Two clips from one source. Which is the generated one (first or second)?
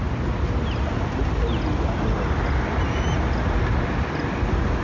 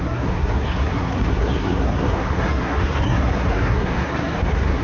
second